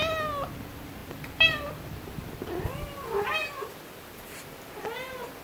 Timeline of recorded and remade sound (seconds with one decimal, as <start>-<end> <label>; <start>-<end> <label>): 0.0-5.4 recorded